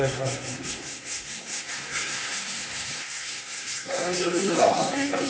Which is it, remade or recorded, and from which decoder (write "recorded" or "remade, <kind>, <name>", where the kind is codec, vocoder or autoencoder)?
remade, codec, SNAC